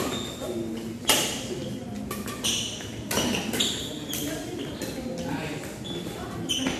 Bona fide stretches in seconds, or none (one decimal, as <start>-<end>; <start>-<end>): 0.0-6.8